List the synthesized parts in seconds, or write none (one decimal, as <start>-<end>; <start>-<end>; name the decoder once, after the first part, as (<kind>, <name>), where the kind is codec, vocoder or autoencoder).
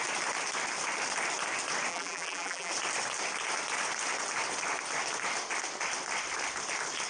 1.9-2.7 (vocoder, BigVGAN v2)